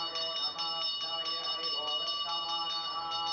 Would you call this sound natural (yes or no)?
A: yes